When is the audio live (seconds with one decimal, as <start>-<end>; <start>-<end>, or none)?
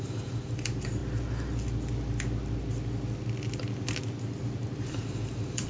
1.0-4.4